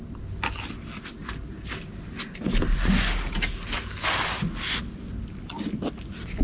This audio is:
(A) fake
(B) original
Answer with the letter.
B